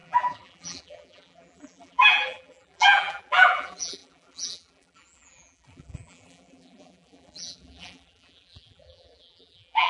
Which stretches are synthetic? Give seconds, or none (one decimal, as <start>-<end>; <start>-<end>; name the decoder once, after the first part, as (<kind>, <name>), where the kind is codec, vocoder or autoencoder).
0.0-9.9 (vocoder, BigVGAN v2)